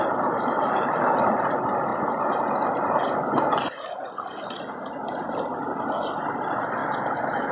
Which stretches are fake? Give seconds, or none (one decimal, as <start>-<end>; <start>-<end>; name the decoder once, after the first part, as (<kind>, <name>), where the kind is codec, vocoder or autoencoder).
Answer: 0.0-1.9 (vocoder, BigVGAN v2); 4.1-6.8